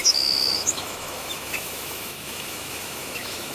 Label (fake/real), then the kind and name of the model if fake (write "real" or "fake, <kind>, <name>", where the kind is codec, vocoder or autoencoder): fake, autoencoder, DAC-VAE